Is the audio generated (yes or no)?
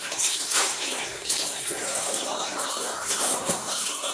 yes